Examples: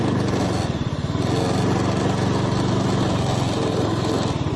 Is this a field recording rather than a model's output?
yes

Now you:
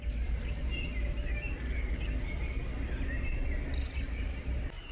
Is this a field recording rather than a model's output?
yes